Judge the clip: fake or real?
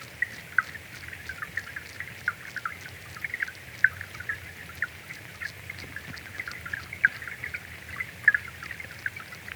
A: real